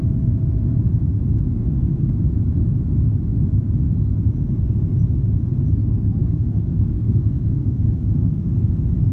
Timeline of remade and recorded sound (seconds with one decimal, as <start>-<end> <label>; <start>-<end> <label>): 0.0-1.6 recorded; 1.6-2.1 remade; 2.1-6.2 recorded; 6.2-8.4 remade; 8.4-9.1 recorded